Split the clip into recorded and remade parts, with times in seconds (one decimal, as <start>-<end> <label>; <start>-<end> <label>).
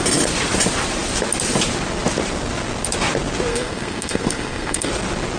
0.0-3.5 recorded; 3.5-4.9 remade; 4.9-5.4 recorded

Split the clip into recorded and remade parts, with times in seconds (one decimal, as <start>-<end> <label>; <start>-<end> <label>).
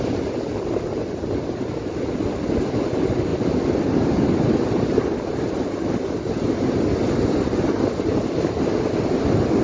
0.0-9.6 recorded